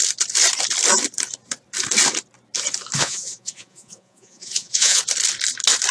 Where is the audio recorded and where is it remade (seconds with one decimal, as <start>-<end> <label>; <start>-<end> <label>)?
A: 0.0-3.0 recorded; 3.0-5.0 remade; 5.0-5.9 recorded